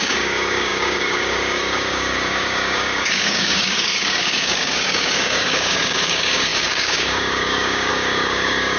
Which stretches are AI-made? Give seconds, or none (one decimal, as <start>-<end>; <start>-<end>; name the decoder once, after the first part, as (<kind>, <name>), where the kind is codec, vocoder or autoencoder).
0.0-8.8 (codec, DAC)